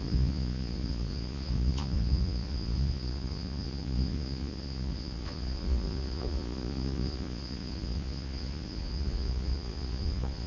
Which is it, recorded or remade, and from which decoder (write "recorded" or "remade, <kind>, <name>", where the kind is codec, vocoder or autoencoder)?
remade, vocoder, Vocos